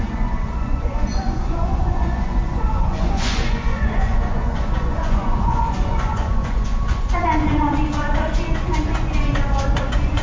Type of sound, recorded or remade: remade